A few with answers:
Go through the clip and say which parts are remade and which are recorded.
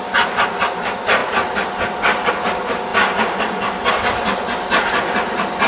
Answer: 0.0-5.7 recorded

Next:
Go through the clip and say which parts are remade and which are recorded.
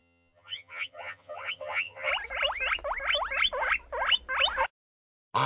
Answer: 0.0-2.1 remade; 2.1-5.5 recorded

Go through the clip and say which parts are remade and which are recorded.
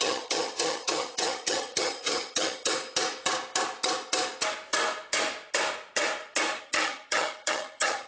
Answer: 0.0-2.7 remade; 2.7-6.6 recorded; 6.6-8.1 remade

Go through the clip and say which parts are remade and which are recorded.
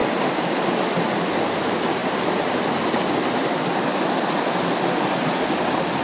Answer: 0.0-6.0 recorded